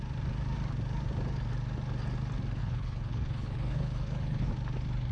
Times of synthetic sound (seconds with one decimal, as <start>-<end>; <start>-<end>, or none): 2.6-4.5